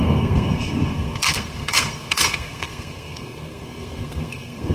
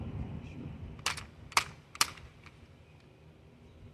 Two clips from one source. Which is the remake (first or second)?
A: first